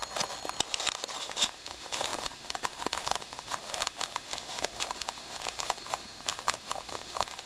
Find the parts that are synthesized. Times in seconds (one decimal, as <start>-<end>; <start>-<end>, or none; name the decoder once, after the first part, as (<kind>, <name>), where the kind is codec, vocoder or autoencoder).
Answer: 1.2-7.5 (autoencoder, DAC-VAE)